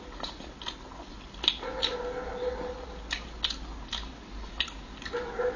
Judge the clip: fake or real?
real